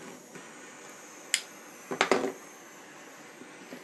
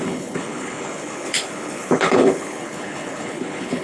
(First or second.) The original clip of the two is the first